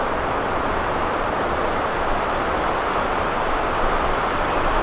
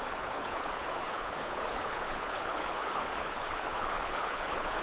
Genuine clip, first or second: first